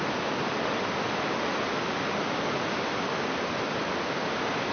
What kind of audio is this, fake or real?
real